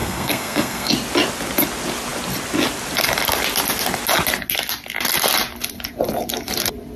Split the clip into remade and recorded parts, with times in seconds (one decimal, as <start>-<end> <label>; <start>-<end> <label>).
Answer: 0.0-0.9 remade; 0.9-7.0 recorded